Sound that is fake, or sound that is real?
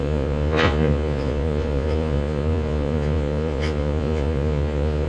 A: fake